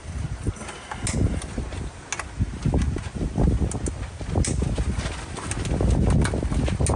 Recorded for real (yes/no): yes